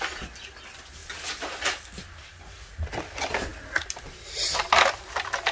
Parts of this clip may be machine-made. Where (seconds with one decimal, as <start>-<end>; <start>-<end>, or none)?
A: none

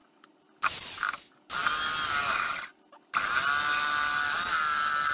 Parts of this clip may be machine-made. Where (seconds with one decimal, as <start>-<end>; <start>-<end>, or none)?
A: 0.0-1.1

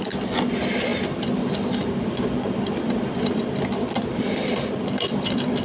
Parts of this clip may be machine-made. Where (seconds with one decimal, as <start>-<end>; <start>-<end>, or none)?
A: 0.0-0.9; 4.3-5.6

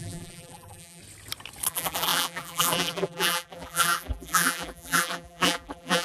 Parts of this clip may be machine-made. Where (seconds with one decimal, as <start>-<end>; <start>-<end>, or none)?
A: 0.0-1.0; 1.7-6.0